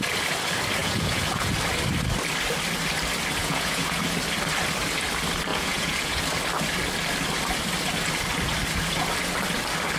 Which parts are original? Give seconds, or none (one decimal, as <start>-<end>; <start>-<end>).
0.0-0.8; 1.5-3.4; 4.0-5.5; 6.2-10.0